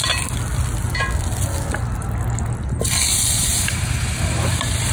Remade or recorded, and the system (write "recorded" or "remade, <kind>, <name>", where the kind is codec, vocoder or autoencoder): recorded